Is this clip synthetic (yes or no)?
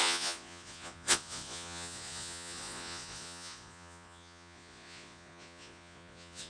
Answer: yes